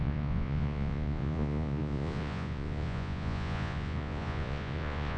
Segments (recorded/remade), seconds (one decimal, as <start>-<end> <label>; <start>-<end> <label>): 0.0-5.2 remade